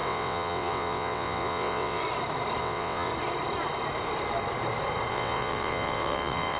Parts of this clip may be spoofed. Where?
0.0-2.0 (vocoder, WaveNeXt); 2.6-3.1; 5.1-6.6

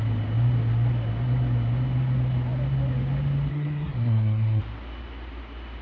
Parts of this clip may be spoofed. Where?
3.5-4.6 (codec, SNAC)

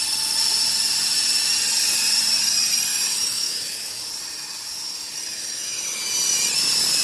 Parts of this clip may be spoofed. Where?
2.9-4.1 (autoencoder, DAC-VAE); 5.3-6.0

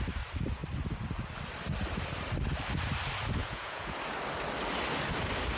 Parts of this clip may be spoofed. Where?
3.4-4.0 (vocoder, Vocos)

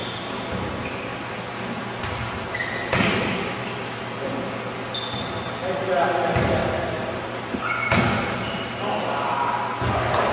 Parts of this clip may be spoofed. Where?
6.6-7.6 (vocoder, BigVGAN v2)

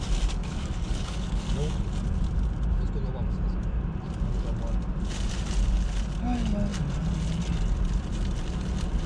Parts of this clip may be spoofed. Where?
0.4-1.7 (codec, DAC)